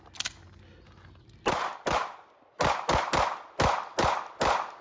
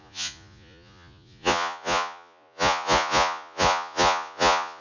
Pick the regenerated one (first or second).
second